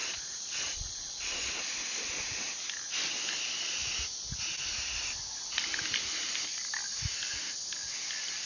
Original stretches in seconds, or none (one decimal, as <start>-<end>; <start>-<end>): 1.5-8.5

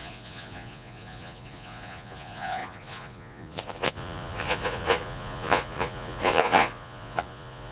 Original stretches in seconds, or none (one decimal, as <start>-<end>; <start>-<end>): none

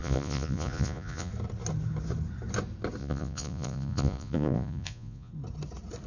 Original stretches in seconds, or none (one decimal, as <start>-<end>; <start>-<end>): 1.3-3.0; 5.3-6.1

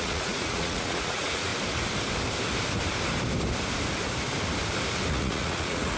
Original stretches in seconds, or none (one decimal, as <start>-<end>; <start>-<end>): 1.5-5.1

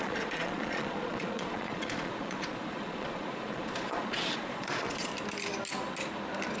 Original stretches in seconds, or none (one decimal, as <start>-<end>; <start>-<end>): 5.1-6.6